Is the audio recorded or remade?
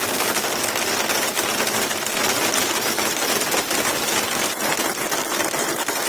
recorded